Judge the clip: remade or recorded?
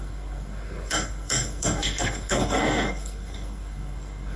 remade